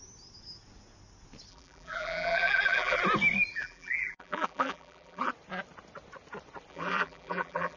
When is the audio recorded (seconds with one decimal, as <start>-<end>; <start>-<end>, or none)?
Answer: 0.0-1.5; 3.0-3.5; 5.3-6.7